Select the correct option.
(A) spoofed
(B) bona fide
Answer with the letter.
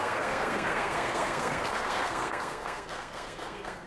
A